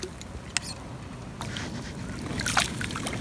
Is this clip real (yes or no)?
yes